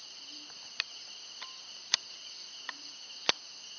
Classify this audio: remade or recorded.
recorded